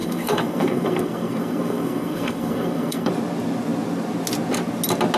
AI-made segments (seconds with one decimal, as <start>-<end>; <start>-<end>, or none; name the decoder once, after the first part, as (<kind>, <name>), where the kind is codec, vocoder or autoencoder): 0.0-3.1 (codec, SNAC)